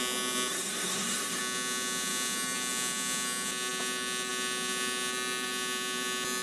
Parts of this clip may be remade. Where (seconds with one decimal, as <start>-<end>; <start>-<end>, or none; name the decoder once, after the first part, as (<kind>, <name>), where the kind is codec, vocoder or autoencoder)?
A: 0.5-1.4 (codec, SNAC)